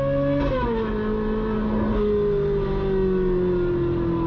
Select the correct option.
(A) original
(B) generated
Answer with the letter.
A